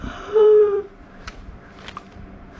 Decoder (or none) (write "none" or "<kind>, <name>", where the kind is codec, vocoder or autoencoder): vocoder, BigVGAN v2